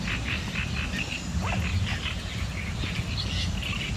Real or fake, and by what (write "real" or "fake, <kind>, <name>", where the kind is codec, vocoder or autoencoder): real